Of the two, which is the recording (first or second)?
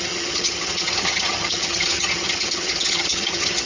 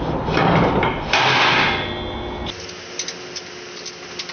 second